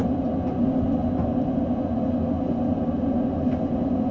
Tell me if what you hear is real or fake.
real